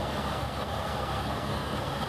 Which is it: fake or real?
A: fake